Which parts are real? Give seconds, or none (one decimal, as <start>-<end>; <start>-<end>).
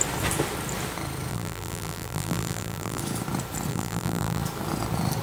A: 0.0-1.3; 3.0-3.7; 4.4-5.2